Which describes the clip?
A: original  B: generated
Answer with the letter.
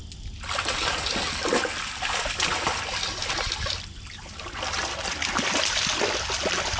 A